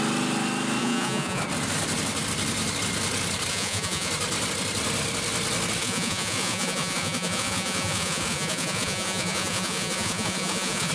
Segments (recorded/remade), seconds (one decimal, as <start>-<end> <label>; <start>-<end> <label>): 0.0-0.8 recorded; 0.8-1.4 remade; 1.4-3.5 recorded; 3.5-4.1 remade; 4.1-5.8 recorded; 5.8-10.9 remade